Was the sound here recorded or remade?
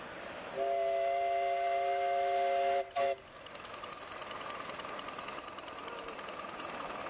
recorded